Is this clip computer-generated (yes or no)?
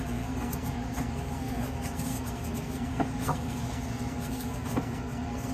yes